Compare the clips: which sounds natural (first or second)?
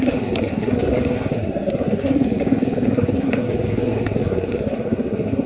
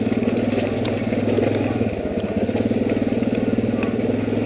second